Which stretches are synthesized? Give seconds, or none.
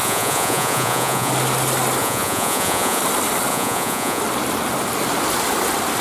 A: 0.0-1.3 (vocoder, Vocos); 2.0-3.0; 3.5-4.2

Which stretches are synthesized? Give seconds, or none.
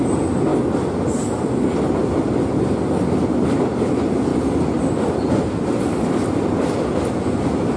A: 4.3-5.8 (vocoder, BigVGAN v2)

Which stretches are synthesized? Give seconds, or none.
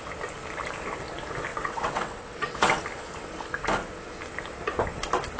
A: 1.5-2.8 (vocoder, WaveNeXt)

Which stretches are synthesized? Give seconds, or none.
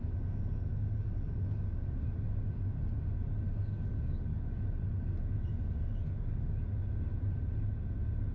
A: none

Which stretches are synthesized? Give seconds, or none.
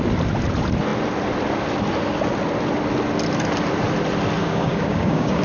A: 4.4-5.4 (codec, DAC)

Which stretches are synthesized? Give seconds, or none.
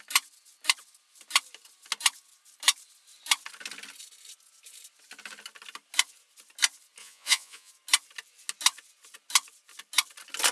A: 7.0-7.7 (vocoder, Vocos)